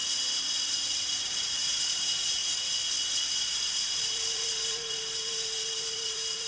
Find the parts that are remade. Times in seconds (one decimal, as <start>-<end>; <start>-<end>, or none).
0.5-2.4; 3.4-6.5